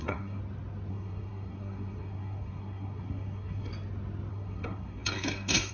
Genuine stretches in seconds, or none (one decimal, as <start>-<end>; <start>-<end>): 0.4-0.9; 3.7-4.3